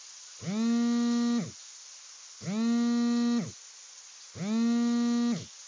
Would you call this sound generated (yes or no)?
no